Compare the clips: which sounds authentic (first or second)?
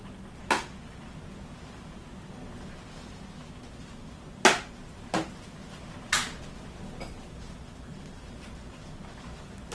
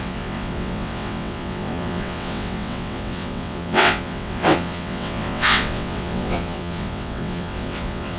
first